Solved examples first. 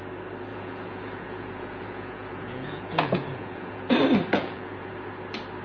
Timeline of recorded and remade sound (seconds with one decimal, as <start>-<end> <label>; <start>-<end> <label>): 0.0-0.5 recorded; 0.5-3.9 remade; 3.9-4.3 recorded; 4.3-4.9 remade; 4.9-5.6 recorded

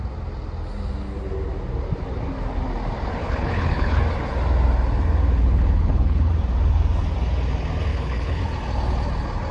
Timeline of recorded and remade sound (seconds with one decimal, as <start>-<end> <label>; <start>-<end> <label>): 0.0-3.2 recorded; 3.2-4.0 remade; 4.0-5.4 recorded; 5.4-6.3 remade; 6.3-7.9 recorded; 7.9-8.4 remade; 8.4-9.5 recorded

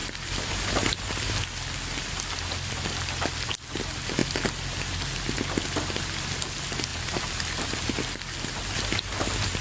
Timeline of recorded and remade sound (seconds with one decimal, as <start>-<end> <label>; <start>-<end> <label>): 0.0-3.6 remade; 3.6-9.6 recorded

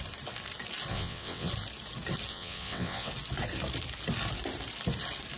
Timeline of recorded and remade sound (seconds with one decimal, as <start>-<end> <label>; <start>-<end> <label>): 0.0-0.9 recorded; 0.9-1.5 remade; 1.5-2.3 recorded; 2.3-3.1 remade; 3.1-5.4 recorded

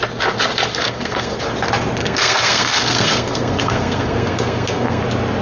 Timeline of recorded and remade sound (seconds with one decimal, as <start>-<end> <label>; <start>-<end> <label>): 0.0-0.7 recorded; 0.7-1.4 remade; 1.4-2.0 recorded; 2.0-5.0 remade; 5.0-5.4 recorded

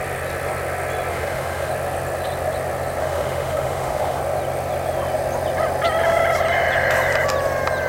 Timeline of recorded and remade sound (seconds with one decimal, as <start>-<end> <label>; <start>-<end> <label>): 0.0-1.1 recorded; 1.1-1.7 remade; 1.7-3.0 recorded; 3.0-4.2 remade; 4.2-7.9 recorded

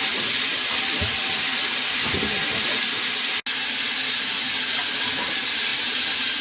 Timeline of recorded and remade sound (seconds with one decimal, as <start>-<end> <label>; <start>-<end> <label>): 0.0-6.4 recorded

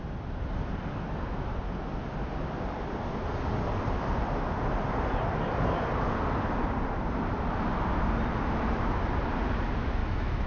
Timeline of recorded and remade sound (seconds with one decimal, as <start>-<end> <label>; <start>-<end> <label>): 0.0-10.0 recorded; 10.0-10.5 remade